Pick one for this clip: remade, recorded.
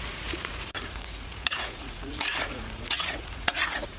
remade